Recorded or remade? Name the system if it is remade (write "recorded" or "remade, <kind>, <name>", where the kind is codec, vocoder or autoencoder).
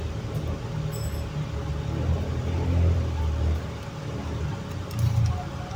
recorded